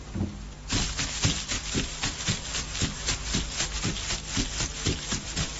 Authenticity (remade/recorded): recorded